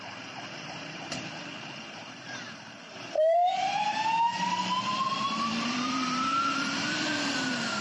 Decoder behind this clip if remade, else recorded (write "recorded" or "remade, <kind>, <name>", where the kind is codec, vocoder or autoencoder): remade, vocoder, BigVGAN v2